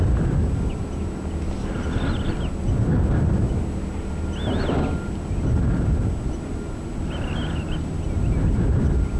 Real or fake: real